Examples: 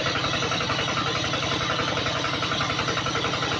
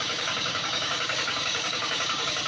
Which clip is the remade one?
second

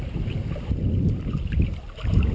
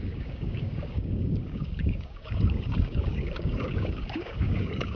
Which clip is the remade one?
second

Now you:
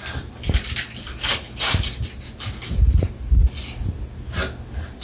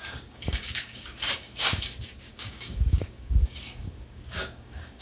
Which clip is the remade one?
second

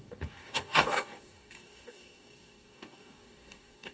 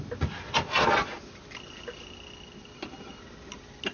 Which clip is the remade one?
first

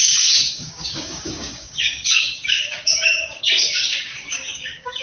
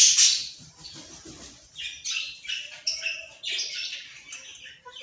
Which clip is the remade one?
first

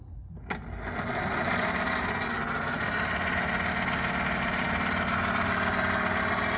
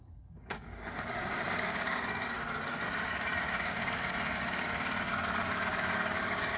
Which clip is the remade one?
second